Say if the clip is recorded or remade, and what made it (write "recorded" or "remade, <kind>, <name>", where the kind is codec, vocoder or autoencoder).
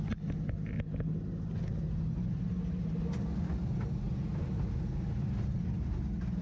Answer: recorded